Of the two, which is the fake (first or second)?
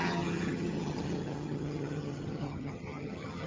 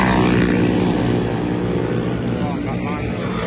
first